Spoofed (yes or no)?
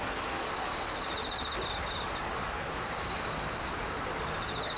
no